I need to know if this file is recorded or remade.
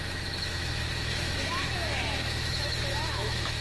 remade